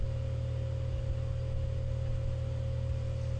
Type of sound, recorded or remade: recorded